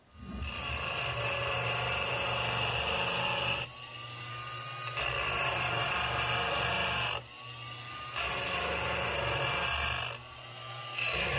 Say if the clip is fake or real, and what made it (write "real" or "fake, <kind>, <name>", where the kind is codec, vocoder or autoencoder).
real